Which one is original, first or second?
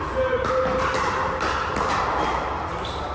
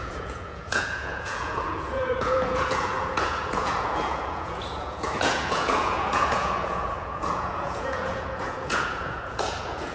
first